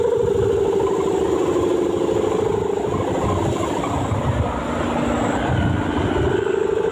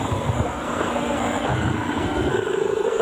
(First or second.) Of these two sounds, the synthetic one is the second